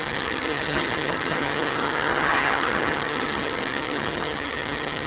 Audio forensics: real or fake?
fake